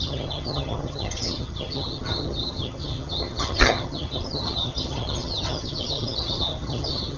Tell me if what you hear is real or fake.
fake